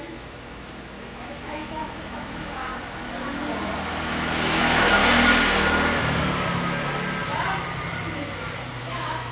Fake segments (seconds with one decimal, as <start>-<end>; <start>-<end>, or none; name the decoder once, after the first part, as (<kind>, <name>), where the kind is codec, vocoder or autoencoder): 0.0-2.7 (autoencoder, DAC-VAE); 4.1-5.0; 8.8-9.3